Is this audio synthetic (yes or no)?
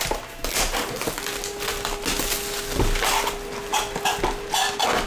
no